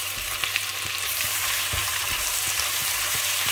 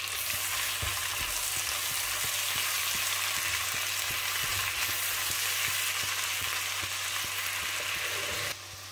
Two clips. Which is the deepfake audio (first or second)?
first